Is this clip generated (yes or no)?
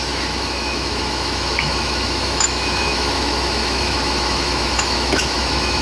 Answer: yes